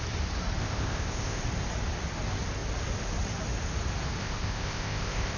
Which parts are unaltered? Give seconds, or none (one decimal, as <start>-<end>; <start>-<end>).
0.0-0.6; 1.4-4.2